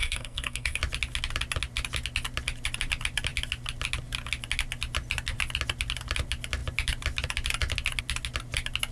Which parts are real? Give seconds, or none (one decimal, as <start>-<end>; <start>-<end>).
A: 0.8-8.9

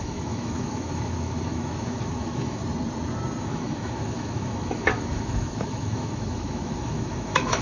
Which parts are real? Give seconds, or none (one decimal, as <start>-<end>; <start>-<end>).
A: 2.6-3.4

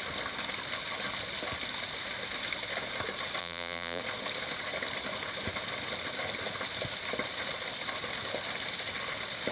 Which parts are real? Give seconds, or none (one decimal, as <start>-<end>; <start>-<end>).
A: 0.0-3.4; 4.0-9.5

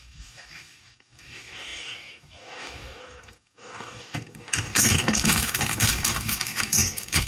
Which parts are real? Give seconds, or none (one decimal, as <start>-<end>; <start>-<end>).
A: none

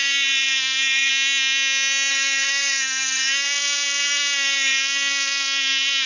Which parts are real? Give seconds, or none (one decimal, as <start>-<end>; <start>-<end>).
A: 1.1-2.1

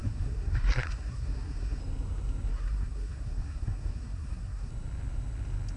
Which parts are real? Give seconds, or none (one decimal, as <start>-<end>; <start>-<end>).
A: 1.8-2.5; 4.7-5.8

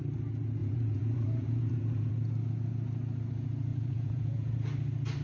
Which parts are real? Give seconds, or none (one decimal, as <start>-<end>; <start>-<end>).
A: 0.0-0.6; 2.1-3.7; 4.6-5.2